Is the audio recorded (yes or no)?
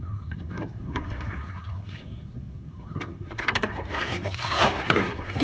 no